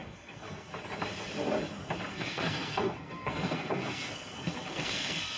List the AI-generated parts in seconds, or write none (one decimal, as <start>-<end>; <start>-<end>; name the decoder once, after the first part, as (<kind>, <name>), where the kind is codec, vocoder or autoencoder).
0.0-0.7 (codec, SNAC); 2.1-5.4